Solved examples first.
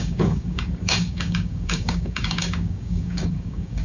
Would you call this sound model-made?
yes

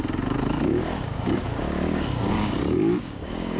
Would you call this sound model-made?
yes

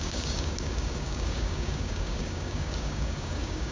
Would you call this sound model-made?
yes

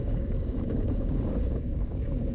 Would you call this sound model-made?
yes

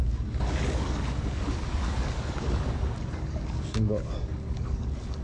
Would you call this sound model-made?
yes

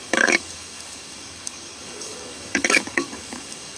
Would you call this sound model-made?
yes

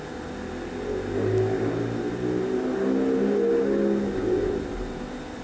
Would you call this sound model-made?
no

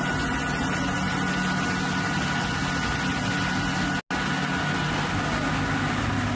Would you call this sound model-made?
no